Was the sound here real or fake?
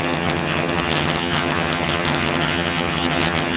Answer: fake